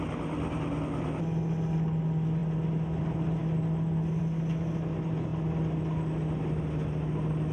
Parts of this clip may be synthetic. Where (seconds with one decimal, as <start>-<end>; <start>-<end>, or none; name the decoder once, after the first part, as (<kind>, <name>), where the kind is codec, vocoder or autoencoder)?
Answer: none